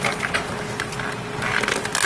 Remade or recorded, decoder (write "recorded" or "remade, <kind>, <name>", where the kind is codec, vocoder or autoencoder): recorded